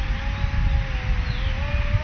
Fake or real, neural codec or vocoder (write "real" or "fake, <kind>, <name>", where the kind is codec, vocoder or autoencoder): real